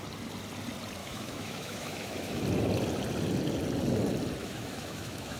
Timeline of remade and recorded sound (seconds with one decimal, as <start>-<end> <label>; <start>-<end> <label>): 0.0-1.0 recorded; 1.0-2.4 remade; 2.4-4.4 recorded; 4.4-5.4 remade